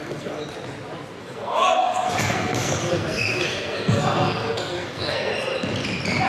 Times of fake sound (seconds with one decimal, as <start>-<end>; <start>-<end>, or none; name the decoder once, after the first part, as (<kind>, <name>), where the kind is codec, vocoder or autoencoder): 0.0-0.4 (codec, SNAC); 1.2-5.3